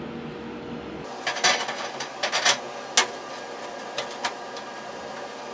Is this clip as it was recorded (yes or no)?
yes